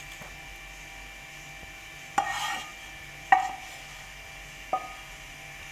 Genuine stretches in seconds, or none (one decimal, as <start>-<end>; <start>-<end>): 0.0-5.7